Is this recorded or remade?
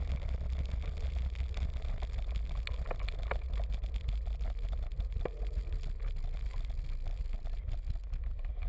recorded